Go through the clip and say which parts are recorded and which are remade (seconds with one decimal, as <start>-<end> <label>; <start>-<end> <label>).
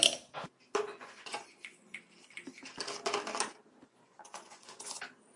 0.0-0.9 recorded; 0.9-2.0 remade; 2.0-3.8 recorded; 3.8-5.0 remade; 5.0-5.4 recorded